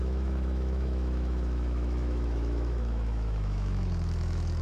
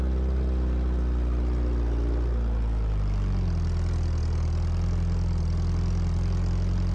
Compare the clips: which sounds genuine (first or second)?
second